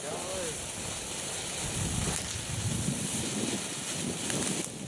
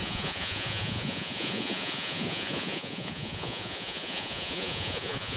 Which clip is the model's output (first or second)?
second